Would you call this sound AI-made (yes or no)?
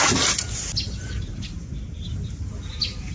no